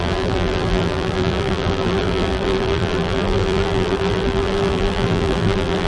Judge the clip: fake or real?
fake